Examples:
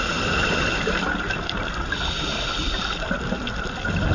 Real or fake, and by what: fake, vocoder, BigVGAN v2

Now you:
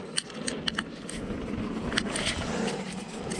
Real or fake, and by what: real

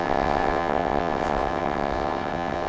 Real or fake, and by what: fake, vocoder, WaveNeXt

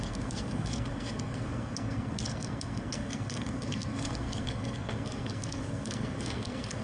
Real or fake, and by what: fake, codec, SNAC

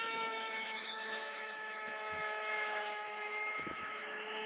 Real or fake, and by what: fake, autoencoder, DAC-VAE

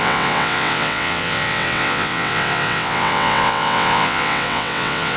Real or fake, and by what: fake, vocoder, WaveNeXt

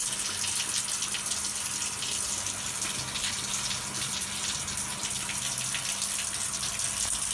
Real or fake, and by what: real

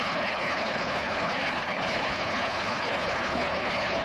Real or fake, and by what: fake, codec, HILCodec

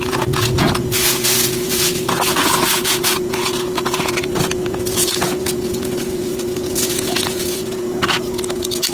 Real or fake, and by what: fake, vocoder, Vocos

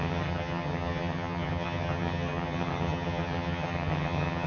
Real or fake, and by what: fake, vocoder, HiFi-GAN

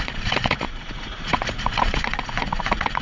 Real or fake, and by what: fake, vocoder, Vocos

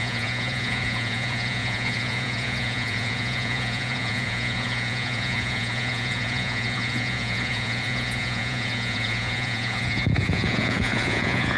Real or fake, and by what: fake, vocoder, Vocos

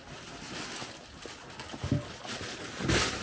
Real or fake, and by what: real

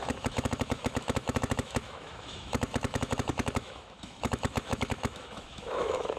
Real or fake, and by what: fake, autoencoder, DAC-VAE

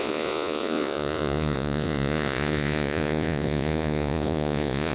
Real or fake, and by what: fake, vocoder, Vocos